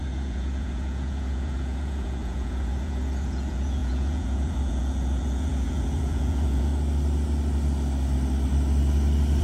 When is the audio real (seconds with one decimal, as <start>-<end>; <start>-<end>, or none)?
6.7-9.4

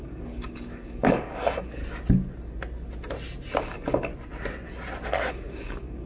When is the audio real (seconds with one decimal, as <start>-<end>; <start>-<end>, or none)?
1.8-3.6; 4.1-5.3

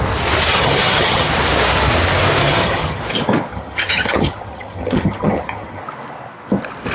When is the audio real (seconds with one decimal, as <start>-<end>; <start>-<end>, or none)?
0.0-0.5; 1.3-2.4; 3.0-3.5; 5.8-6.9

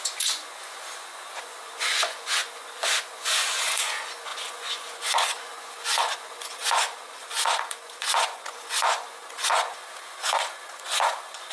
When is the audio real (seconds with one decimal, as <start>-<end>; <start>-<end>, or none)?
none

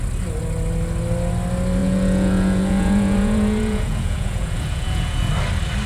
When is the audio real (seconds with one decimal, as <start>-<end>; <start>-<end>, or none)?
0.0-1.8; 5.3-5.9